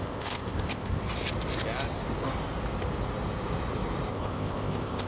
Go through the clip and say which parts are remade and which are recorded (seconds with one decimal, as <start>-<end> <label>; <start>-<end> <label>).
0.0-1.0 remade; 1.0-4.1 recorded; 4.1-5.1 remade